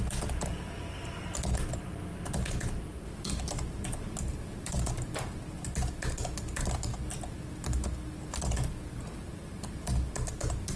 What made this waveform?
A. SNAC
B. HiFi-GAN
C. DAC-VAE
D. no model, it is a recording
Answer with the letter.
D